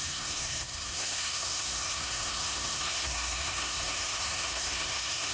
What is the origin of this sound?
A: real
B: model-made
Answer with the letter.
B